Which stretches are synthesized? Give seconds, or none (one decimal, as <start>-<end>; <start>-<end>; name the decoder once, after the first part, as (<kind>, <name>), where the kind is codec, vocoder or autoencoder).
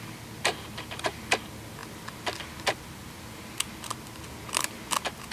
none